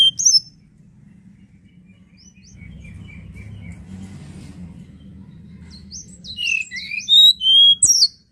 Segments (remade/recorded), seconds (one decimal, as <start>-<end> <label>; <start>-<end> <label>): 0.0-8.3 recorded